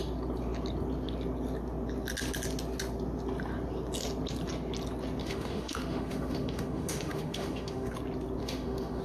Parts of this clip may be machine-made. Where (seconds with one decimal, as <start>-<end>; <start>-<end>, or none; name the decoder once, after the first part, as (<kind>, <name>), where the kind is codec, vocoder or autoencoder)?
5.2-7.9 (autoencoder, DAC-VAE); 8.4-9.0